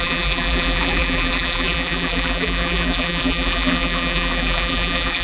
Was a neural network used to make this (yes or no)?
yes